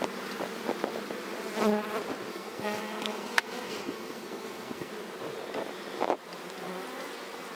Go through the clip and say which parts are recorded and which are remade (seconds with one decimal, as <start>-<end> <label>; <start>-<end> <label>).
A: 0.0-2.3 recorded; 2.3-4.9 remade; 4.9-7.5 recorded